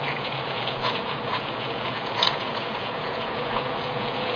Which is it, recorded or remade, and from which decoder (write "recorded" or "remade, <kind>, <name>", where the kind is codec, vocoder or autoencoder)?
remade, vocoder, Vocos